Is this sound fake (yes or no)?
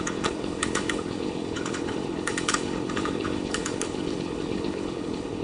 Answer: yes